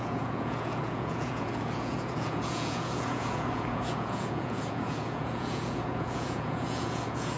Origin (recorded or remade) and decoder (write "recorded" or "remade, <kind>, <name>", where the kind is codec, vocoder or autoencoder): remade, vocoder, Vocos